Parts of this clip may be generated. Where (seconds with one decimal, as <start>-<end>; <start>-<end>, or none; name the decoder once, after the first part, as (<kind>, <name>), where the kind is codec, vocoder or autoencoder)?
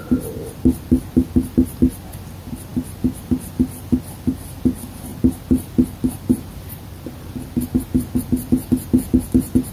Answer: 5.1-7.6 (vocoder, BigVGAN v2)